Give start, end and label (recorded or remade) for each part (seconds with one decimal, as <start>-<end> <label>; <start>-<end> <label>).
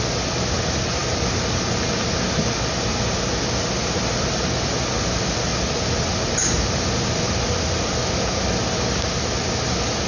0.0-10.1 recorded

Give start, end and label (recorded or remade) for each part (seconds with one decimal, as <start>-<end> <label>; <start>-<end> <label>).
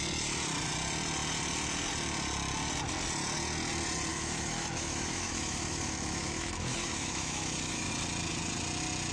0.0-4.1 recorded; 4.1-7.9 remade; 7.9-9.1 recorded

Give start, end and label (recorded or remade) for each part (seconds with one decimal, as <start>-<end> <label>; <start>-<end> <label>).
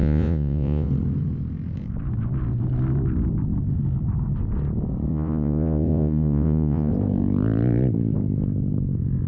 0.0-0.9 remade; 0.9-5.1 recorded; 5.1-6.9 remade; 6.9-9.3 recorded